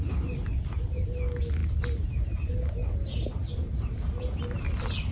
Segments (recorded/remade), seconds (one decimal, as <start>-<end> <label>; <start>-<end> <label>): 0.0-5.1 recorded